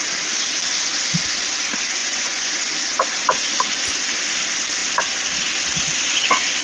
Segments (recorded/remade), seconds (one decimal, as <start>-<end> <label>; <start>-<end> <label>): 0.0-2.0 recorded; 2.0-2.7 remade; 2.7-6.6 recorded